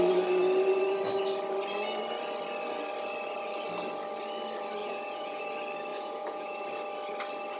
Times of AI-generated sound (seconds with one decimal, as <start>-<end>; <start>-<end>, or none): 4.8-5.4; 5.9-6.6